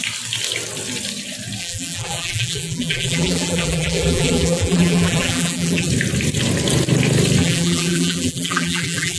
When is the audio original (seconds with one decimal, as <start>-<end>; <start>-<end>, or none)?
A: 0.0-1.6; 5.9-7.4